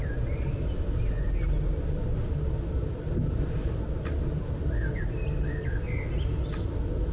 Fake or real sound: real